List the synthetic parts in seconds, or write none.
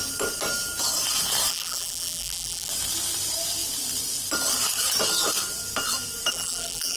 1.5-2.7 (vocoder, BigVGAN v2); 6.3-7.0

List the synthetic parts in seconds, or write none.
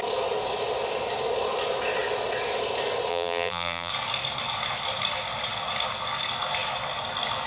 3.1-3.9 (vocoder, BigVGAN v2)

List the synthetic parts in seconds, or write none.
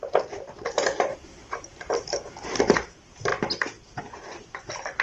1.1-2.6 (vocoder, BigVGAN v2)